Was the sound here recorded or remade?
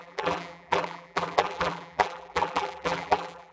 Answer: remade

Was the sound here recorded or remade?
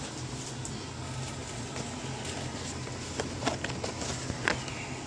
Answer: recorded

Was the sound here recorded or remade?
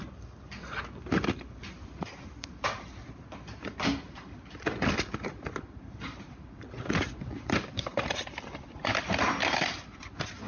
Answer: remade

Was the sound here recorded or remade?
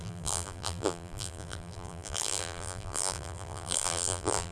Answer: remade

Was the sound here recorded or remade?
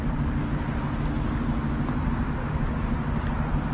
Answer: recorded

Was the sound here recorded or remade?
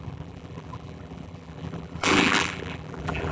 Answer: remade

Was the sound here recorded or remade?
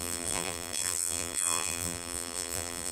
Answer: remade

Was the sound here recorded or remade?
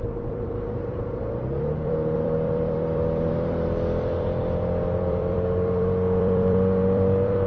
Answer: remade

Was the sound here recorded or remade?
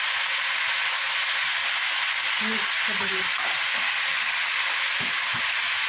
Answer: recorded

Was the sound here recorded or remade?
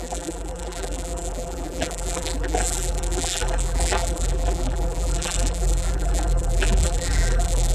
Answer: remade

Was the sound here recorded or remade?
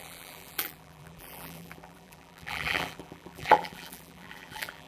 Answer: remade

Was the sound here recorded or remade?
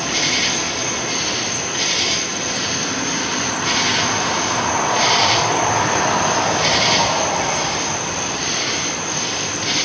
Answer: remade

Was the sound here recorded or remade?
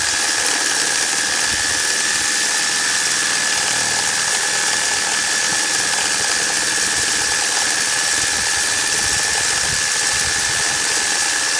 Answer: recorded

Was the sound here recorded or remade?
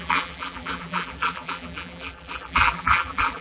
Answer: remade